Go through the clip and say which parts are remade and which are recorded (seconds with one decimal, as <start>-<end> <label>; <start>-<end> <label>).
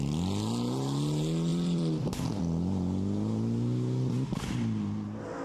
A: 0.0-1.5 recorded; 1.5-2.4 remade; 2.4-5.4 recorded